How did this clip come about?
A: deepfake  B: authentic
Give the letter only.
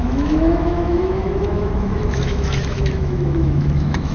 A